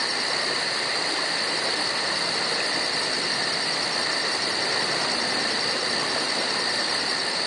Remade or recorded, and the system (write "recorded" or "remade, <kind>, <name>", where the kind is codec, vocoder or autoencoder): recorded